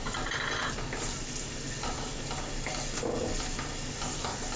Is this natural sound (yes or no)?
yes